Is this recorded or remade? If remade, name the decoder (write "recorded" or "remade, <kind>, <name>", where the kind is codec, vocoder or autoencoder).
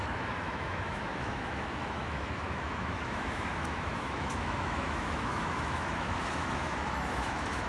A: remade, autoencoder, DAC-VAE